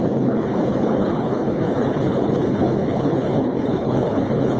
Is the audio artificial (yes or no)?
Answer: yes